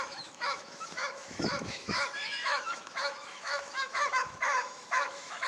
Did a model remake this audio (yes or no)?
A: yes